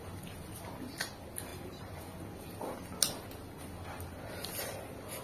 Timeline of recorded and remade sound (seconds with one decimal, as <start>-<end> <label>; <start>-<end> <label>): 0.0-5.2 recorded